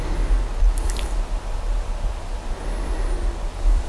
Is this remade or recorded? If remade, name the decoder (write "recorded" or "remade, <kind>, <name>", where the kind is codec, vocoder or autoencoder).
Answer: recorded